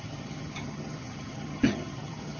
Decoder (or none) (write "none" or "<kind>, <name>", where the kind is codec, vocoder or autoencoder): vocoder, HiFi-GAN